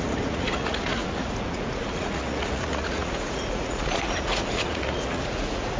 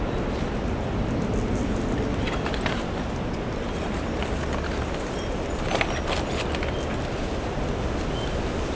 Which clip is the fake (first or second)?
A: first